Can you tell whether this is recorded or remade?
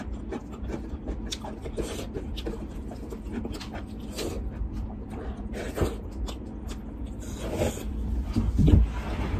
recorded